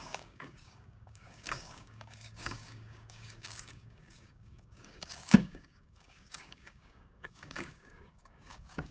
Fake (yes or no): yes